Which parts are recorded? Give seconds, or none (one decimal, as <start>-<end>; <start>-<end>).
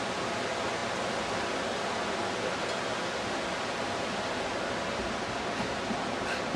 0.0-6.6